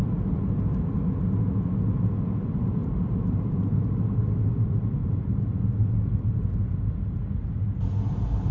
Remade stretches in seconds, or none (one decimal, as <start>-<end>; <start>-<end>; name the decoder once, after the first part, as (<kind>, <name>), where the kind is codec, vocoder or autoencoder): 2.8-3.7 (vocoder, BigVGAN v2); 5.0-5.5